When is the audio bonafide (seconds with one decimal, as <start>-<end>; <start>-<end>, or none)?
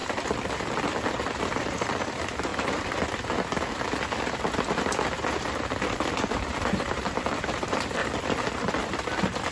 0.0-1.1; 2.5-5.0; 8.0-9.5